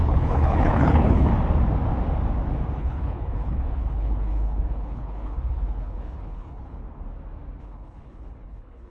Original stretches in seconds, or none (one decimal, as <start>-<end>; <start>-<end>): 1.3-2.8; 6.8-7.6

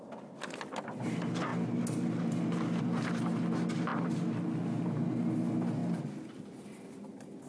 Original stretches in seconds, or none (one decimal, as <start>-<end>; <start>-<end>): 0.0-7.5

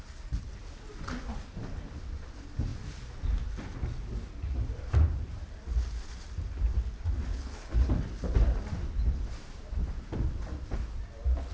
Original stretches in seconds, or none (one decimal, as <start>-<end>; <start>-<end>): 0.0-7.3; 7.9-11.5

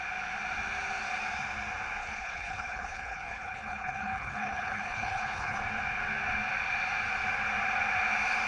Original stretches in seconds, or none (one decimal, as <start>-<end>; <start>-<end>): 0.0-2.0; 5.6-8.5

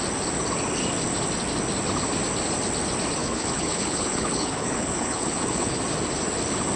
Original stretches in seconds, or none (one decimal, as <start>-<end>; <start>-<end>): 0.0-3.2; 5.8-6.8

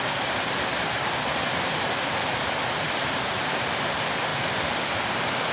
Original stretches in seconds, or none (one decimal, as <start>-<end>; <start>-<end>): 0.0-5.5

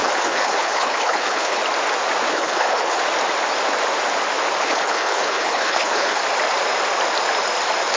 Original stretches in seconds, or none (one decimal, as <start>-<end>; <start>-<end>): 1.6-2.3; 3.0-4.6; 6.2-8.0

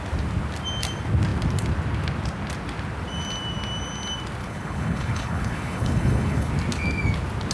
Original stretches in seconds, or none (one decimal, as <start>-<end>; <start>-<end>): 0.0-4.4; 6.5-7.5